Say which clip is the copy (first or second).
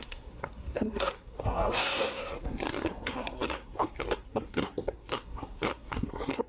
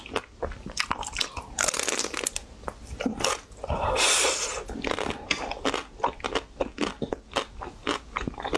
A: first